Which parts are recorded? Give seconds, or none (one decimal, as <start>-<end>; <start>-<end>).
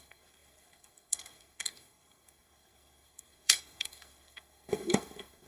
none